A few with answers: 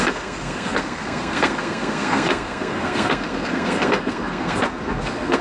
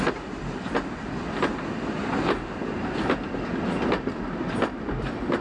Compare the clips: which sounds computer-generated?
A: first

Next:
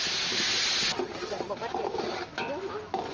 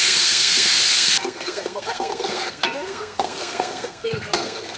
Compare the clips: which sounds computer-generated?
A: second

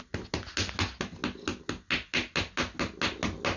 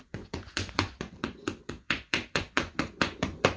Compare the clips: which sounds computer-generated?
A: second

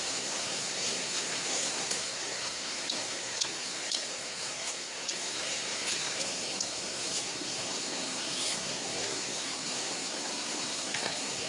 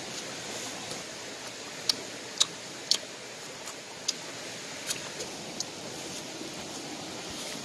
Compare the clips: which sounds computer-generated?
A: first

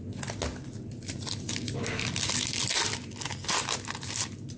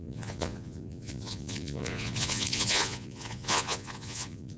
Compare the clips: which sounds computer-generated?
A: second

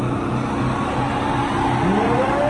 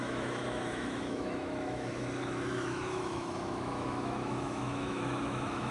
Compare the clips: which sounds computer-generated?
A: second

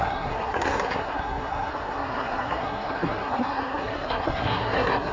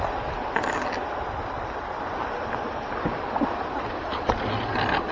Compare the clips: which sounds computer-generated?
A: first